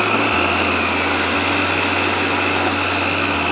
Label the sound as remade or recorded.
recorded